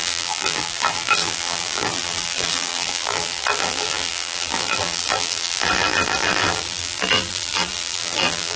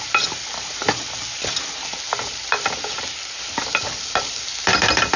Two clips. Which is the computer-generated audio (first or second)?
first